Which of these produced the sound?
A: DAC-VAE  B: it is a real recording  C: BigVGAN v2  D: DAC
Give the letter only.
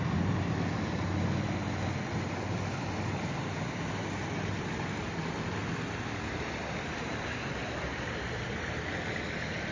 B